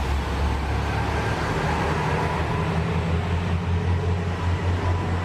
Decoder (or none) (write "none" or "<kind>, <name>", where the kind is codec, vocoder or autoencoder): none